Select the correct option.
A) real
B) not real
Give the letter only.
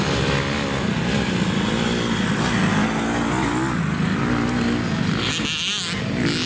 A